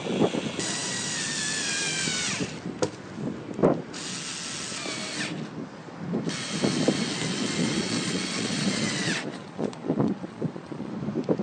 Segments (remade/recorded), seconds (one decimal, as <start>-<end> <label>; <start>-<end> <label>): 0.0-7.6 recorded; 7.6-10.9 remade; 10.9-11.4 recorded